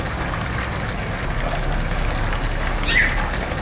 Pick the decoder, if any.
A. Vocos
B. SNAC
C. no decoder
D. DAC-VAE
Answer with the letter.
C